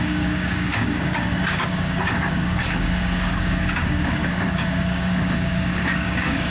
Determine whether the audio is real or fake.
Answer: fake